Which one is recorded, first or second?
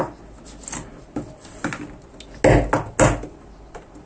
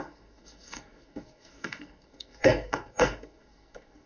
first